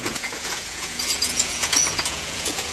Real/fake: fake